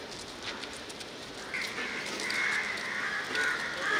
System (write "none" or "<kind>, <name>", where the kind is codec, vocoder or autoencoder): none